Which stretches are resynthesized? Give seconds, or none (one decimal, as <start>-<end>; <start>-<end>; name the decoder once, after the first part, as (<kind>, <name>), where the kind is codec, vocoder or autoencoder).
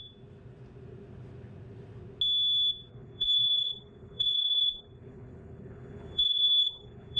2.9-7.2 (codec, HILCodec)